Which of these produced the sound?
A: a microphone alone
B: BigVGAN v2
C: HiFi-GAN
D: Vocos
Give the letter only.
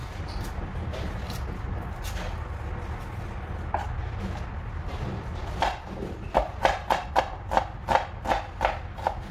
A